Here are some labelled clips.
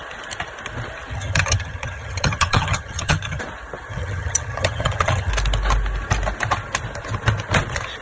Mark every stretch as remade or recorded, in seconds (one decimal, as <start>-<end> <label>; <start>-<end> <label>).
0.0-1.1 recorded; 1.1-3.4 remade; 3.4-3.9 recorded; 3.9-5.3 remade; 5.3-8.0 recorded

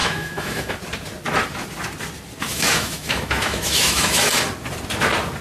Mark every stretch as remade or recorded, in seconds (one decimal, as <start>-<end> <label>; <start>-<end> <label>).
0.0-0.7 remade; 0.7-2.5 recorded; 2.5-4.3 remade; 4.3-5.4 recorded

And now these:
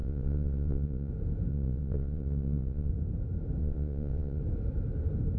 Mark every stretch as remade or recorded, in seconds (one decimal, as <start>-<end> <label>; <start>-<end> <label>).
0.0-1.1 remade; 1.1-1.5 recorded; 1.5-2.9 remade; 2.9-3.6 recorded; 3.6-4.4 remade; 4.4-5.4 recorded